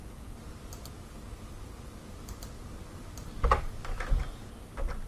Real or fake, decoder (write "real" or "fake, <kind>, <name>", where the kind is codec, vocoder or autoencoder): real